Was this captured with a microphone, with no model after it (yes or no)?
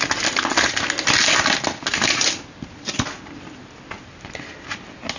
yes